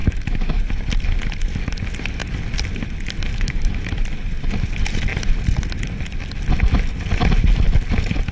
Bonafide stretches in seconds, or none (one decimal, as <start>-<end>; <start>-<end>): 0.6-3.3; 3.8-8.3